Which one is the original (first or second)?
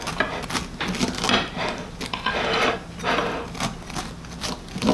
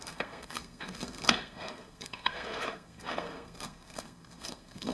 first